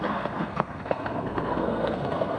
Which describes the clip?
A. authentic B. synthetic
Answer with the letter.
B